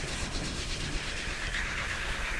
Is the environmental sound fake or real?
fake